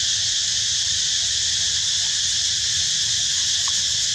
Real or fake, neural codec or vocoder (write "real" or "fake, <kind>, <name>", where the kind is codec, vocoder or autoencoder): real